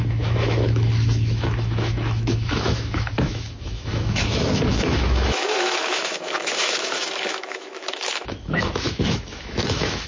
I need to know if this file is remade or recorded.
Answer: remade